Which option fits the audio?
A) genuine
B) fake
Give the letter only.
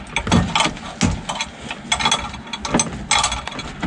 A